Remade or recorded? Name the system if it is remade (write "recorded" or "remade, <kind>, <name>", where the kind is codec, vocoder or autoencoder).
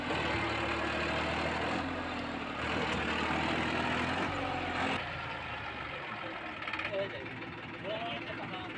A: recorded